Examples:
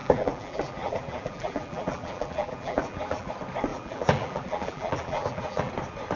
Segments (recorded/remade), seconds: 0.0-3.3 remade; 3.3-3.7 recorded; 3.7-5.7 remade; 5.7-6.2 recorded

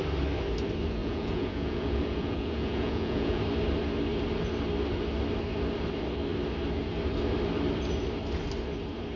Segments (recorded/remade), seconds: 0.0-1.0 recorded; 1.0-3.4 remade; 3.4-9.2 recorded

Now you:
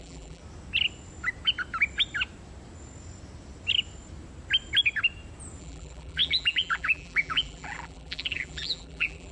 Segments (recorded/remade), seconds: 0.0-0.4 remade; 0.4-5.6 recorded; 5.6-9.3 remade